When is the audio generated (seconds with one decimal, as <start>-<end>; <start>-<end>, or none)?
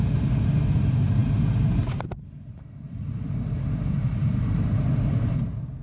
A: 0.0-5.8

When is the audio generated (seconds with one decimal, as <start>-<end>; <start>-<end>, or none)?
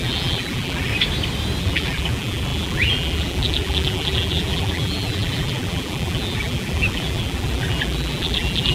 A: 0.0-0.9; 1.6-8.7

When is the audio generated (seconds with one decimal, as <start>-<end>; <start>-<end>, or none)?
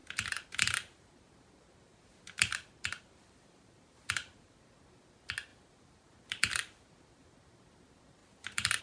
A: 0.0-4.6; 5.5-7.3; 8.2-8.8